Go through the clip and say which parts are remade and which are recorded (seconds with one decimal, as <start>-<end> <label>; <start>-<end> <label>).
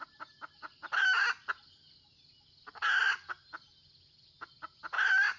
0.0-5.4 recorded